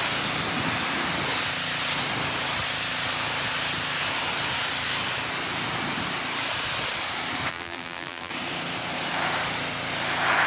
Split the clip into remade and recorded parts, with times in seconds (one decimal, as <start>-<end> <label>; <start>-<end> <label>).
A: 0.0-7.5 recorded; 7.5-8.3 remade; 8.3-10.5 recorded